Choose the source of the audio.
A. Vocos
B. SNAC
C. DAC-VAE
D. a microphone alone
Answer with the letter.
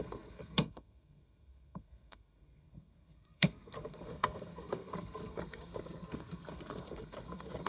B